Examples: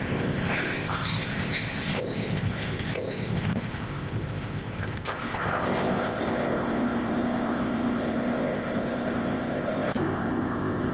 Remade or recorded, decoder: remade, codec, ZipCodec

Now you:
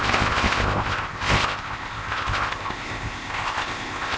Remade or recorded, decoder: remade, codec, ZipCodec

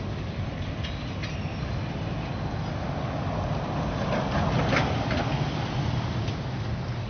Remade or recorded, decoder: recorded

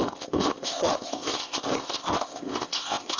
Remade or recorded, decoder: remade, codec, ZipCodec